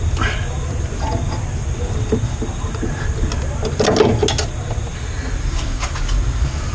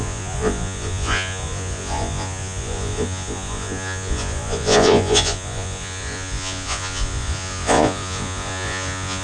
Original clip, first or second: first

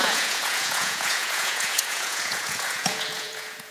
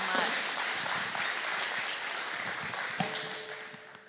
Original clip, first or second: second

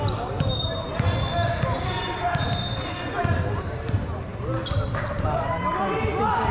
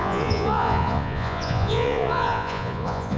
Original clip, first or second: first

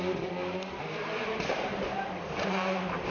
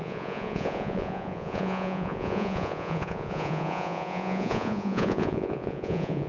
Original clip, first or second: first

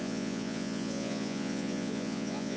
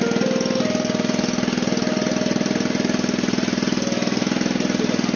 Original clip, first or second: second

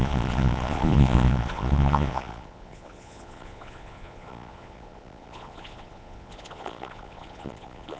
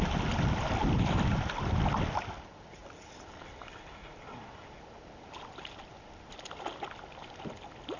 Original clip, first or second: second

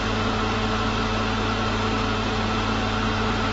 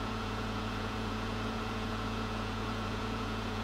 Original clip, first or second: first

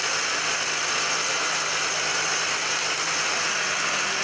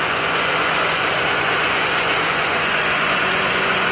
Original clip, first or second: first